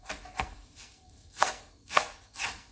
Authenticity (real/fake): fake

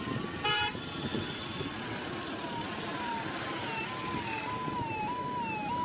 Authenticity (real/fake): real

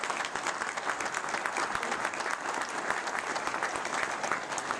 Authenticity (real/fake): real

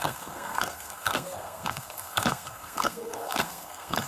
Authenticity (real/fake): fake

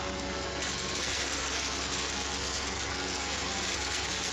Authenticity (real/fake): fake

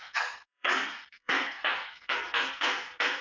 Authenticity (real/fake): fake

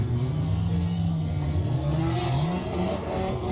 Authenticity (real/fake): fake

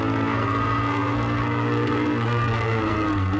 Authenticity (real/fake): fake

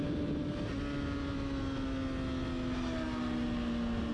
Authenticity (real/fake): real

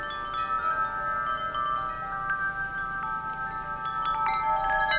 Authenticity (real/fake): real